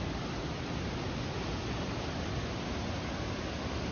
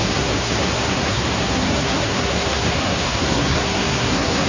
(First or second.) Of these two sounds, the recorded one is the first